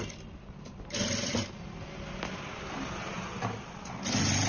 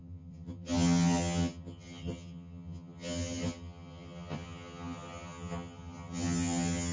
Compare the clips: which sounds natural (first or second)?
first